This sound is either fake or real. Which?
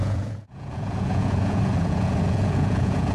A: fake